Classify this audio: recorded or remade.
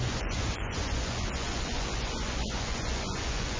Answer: remade